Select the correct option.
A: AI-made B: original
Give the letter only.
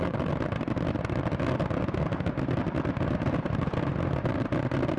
B